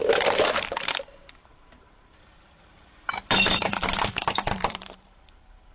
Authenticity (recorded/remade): remade